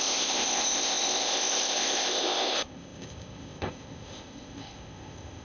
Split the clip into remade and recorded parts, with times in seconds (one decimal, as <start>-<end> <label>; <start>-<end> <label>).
0.0-5.4 remade